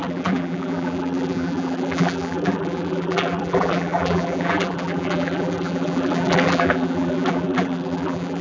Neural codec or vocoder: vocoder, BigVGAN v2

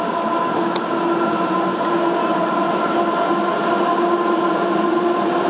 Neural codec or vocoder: none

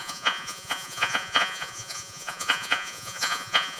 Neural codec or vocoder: vocoder, Vocos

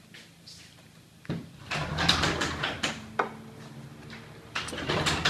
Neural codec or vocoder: none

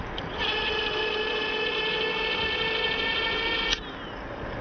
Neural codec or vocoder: none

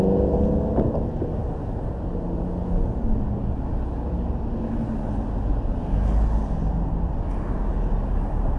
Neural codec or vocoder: none